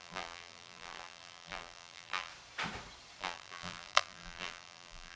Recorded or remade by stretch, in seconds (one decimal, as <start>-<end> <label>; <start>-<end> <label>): 0.0-2.3 remade; 2.3-3.2 recorded; 3.2-5.2 remade